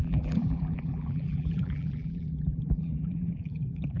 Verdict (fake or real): fake